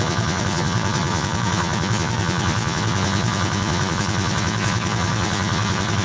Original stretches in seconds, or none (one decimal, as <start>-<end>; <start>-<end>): none